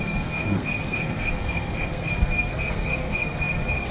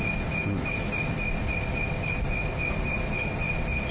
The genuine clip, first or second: second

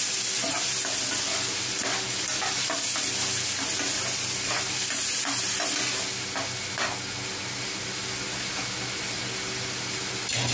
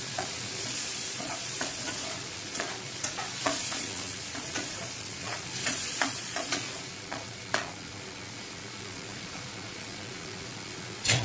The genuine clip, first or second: first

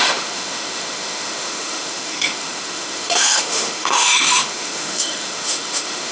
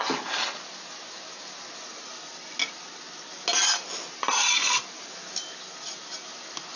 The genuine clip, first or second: second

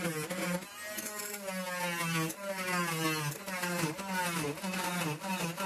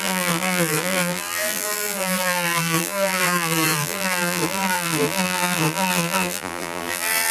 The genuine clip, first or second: first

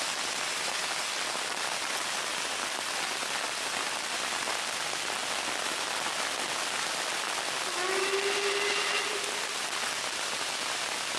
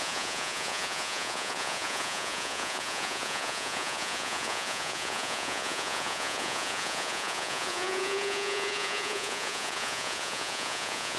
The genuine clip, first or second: first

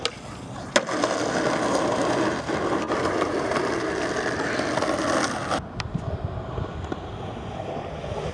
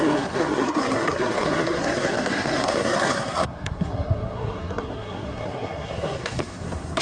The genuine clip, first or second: first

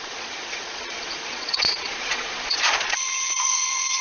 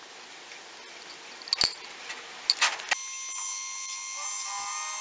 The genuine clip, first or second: second